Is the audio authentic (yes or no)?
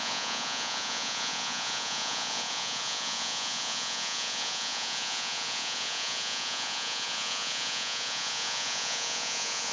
no